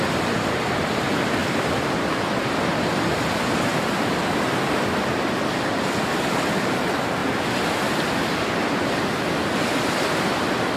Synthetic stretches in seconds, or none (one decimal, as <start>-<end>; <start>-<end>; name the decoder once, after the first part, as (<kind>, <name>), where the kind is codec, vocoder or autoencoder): 1.4-1.9 (vocoder, BigVGAN v2); 3.7-5.8; 7.2-8.5